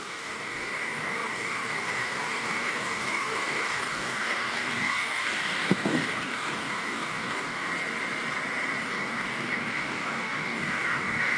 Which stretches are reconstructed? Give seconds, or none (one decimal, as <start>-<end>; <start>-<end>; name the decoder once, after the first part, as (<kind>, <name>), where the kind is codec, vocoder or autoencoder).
0.0-7.7 (codec, DAC); 8.8-11.4